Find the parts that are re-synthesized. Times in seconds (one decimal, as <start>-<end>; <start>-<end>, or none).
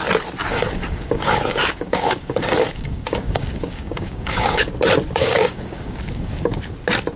0.4-4.7; 5.2-6.6